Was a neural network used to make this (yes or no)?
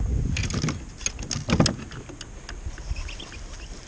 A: no